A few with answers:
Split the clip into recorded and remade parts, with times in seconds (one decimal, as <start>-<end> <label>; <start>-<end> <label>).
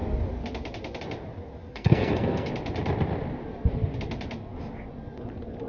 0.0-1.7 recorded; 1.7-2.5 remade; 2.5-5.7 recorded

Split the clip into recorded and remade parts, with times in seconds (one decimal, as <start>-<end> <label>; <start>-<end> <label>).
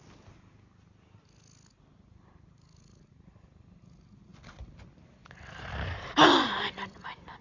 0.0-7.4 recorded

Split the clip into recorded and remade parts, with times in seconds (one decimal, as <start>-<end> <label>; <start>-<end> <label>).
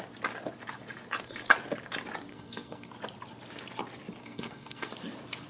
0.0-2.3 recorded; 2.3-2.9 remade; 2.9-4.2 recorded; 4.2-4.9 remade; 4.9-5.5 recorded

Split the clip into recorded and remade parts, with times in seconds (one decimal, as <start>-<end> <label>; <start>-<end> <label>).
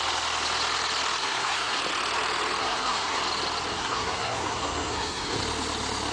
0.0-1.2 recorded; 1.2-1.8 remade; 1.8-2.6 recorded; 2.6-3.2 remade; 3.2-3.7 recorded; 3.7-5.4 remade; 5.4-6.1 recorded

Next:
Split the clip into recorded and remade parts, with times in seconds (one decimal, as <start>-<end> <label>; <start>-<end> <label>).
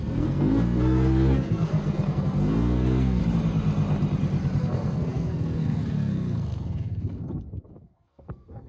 0.0-3.2 remade; 3.2-4.6 recorded; 4.6-8.7 remade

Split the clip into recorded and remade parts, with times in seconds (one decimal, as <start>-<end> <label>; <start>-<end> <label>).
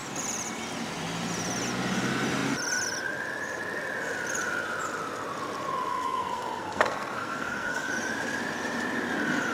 0.0-5.9 recorded; 5.9-7.9 remade; 7.9-9.5 recorded